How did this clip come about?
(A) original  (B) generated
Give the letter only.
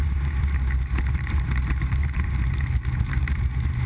B